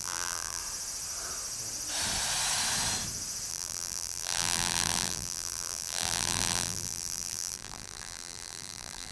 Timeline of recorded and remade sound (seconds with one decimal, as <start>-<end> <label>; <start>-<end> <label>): 0.0-0.6 remade; 0.6-3.5 recorded; 3.5-9.1 remade